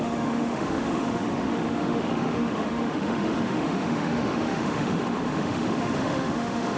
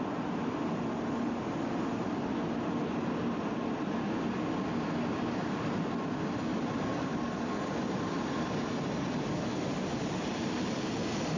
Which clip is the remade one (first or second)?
first